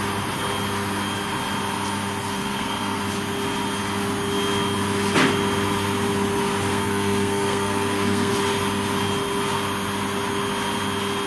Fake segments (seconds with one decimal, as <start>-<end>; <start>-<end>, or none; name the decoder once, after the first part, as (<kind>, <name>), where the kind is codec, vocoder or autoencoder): 2.4-3.0 (codec, SNAC); 6.7-8.3